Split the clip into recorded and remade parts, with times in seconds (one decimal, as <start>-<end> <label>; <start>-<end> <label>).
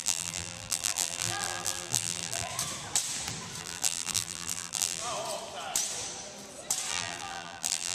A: 0.0-2.5 remade; 2.5-3.6 recorded; 3.6-5.0 remade; 5.0-6.9 recorded; 6.9-7.9 remade